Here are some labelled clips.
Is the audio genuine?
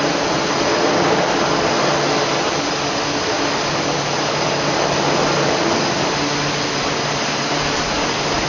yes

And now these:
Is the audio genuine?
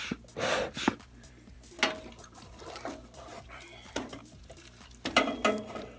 yes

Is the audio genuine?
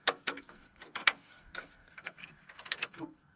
no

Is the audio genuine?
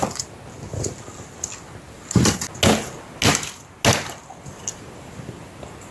yes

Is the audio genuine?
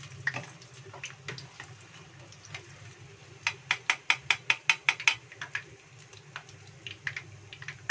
yes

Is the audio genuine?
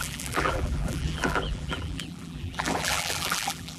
no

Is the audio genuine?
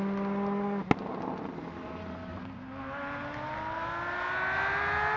yes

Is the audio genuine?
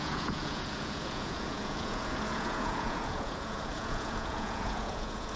no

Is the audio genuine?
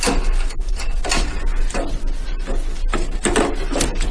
yes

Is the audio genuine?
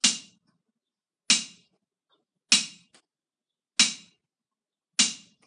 yes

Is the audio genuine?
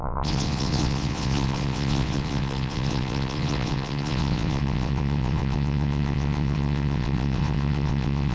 no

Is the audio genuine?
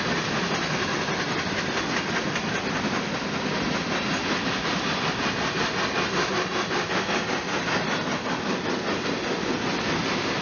yes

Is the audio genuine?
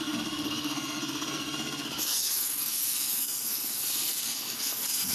no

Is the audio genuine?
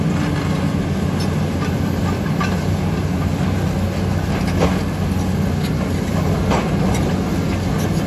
yes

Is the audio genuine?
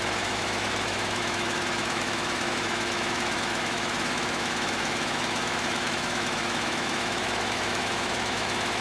no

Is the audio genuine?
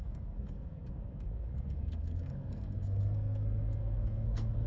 no